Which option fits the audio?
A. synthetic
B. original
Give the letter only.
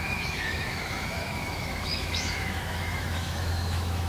A